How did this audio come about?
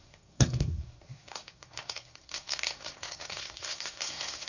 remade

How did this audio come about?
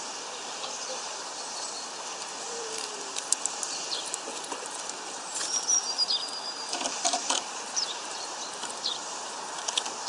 remade